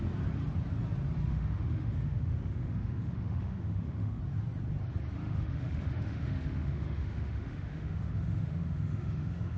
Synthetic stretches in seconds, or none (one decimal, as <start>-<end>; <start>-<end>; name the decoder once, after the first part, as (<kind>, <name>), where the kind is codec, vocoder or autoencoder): 1.3-4.2 (autoencoder, DAC-VAE); 5.2-9.6